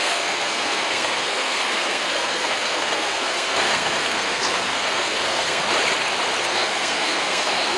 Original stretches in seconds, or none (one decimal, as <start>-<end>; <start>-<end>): 5.6-6.4